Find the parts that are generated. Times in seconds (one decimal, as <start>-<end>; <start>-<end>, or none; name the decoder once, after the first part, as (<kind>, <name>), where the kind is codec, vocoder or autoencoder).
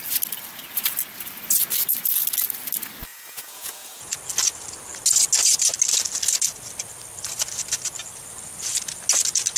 3.1-4.2 (vocoder, Vocos)